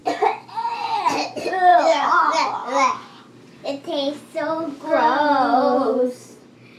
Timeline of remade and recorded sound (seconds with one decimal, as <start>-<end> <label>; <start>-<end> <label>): 0.0-1.7 recorded; 1.7-2.2 remade; 2.2-2.6 recorded; 2.6-3.2 remade; 3.2-6.8 recorded